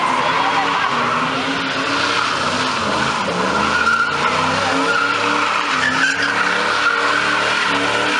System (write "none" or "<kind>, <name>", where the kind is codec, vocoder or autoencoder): none